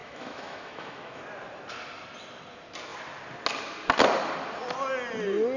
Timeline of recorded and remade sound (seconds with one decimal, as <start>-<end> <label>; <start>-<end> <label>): 0.0-1.2 remade; 1.2-5.6 recorded